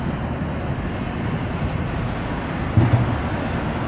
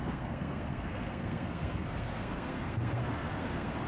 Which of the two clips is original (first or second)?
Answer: first